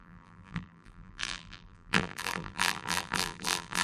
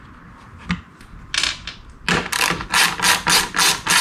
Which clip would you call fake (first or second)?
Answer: first